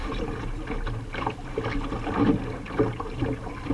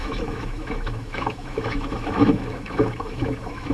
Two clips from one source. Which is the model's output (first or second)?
second